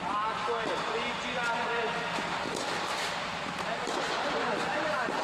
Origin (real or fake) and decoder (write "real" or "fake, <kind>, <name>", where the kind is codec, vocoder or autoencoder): real